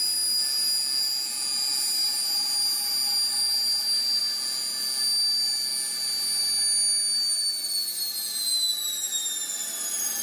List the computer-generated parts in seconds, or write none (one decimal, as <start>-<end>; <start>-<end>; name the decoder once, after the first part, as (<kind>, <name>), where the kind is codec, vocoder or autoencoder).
none